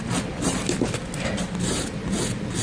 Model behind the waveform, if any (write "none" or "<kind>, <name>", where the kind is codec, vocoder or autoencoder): none